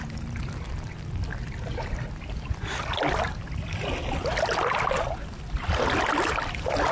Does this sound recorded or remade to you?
recorded